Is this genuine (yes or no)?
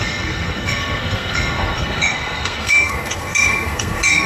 no